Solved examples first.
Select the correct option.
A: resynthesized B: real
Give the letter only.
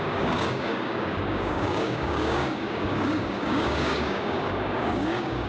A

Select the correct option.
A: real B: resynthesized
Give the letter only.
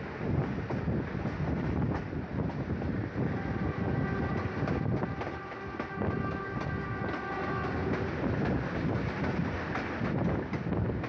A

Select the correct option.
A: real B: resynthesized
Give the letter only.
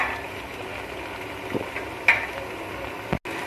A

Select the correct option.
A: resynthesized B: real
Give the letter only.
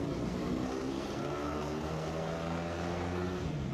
A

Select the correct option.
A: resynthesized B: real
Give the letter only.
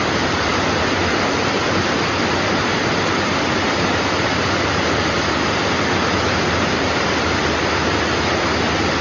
B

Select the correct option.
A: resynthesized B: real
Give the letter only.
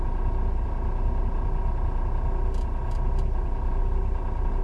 B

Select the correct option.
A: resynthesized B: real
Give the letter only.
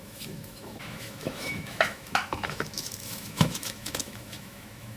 A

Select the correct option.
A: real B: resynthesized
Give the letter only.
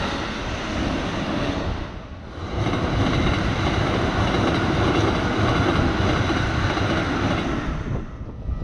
A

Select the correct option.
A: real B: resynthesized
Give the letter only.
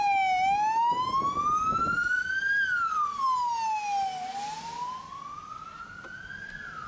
A